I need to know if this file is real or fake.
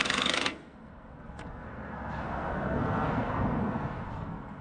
fake